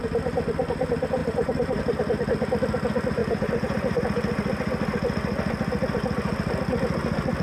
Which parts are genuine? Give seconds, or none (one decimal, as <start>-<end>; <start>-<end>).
0.0-1.2; 1.8-3.2; 4.0-7.4